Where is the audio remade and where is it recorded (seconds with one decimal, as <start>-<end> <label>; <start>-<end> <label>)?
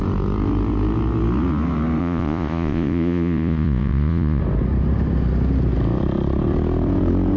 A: 0.0-2.0 recorded; 2.0-4.4 remade; 4.4-7.4 recorded